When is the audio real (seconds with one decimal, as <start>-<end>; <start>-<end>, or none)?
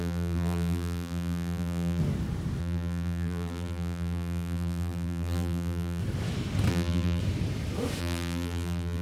2.0-2.6; 6.0-6.7; 7.2-8.0